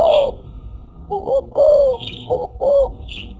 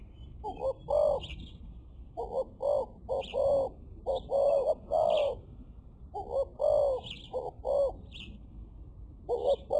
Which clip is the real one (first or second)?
second